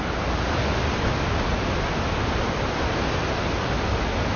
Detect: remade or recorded recorded